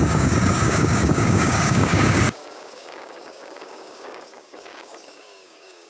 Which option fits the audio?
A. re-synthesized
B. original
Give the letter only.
A